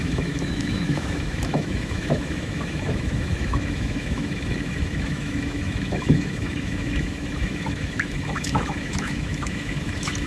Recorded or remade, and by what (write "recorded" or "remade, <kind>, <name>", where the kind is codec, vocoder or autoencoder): remade, autoencoder, DAC-VAE